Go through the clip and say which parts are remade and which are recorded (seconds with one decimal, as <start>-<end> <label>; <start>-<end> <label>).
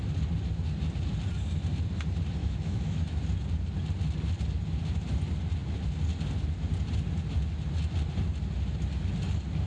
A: 0.0-2.4 recorded; 2.4-3.2 remade; 3.2-9.7 recorded